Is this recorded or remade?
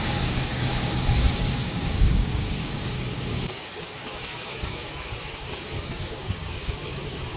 remade